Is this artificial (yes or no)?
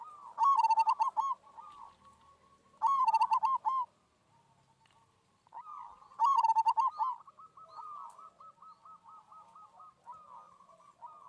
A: no